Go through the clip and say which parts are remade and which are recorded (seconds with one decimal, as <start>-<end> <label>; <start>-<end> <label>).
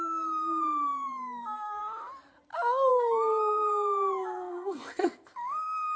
0.0-1.8 remade; 1.8-2.9 recorded; 2.9-6.0 remade